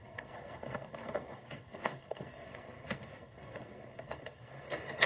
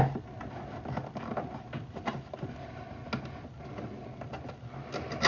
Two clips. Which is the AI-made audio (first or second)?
first